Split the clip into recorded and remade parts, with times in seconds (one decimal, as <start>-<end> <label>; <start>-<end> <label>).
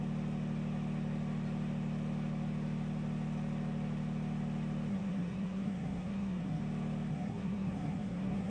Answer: 0.0-4.9 recorded; 4.9-6.6 remade; 6.6-7.1 recorded; 7.1-8.5 remade